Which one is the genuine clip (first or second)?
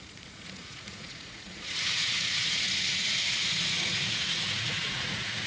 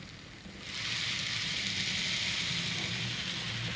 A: second